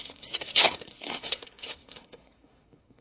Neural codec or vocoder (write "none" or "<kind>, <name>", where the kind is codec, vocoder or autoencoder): codec, SNAC